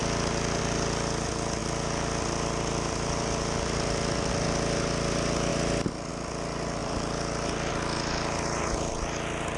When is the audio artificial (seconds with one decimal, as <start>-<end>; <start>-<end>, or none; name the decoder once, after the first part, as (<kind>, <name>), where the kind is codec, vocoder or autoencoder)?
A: 1.6-4.3 (vocoder, BigVGAN v2); 5.5-6.1; 6.8-7.7